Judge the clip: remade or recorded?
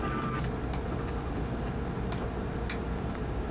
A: recorded